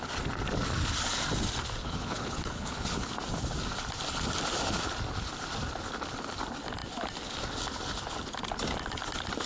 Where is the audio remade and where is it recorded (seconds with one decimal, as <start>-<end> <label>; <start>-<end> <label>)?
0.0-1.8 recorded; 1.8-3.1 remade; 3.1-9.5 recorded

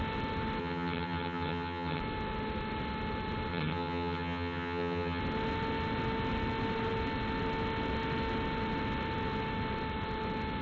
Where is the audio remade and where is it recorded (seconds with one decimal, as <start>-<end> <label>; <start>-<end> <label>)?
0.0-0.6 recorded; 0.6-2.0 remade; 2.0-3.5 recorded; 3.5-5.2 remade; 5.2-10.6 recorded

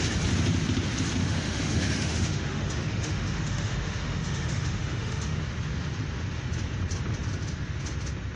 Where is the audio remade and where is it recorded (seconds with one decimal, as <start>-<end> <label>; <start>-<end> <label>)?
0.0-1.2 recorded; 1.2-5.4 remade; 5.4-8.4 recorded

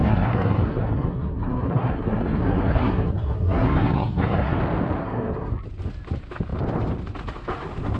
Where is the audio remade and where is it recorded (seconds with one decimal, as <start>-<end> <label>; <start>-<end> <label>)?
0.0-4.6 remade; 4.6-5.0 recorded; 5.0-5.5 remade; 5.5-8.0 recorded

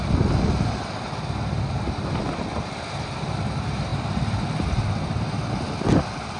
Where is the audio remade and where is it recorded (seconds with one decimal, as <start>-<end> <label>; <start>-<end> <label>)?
0.0-6.4 recorded

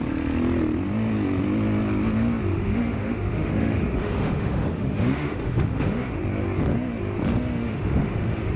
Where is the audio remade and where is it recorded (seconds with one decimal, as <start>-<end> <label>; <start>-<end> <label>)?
0.0-2.5 recorded; 2.5-6.2 remade; 6.2-7.6 recorded; 7.6-8.6 remade

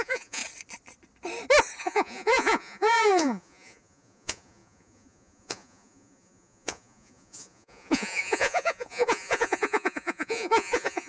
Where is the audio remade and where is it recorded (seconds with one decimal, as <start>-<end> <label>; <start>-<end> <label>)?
0.0-0.4 remade; 0.4-1.8 recorded; 1.8-11.1 remade